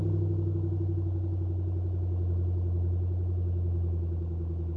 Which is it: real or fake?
real